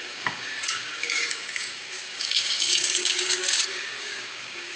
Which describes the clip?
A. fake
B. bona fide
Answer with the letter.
A